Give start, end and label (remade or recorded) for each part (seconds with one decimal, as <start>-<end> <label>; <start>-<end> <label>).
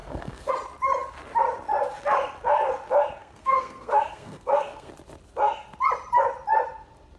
0.0-0.5 remade; 0.5-3.2 recorded; 3.2-4.9 remade; 4.9-7.2 recorded